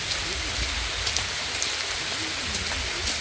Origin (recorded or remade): recorded